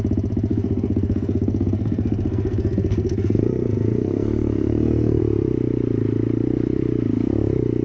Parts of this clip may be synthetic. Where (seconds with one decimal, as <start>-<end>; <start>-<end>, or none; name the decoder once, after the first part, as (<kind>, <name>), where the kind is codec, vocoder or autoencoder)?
0.5-5.2 (codec, SNAC)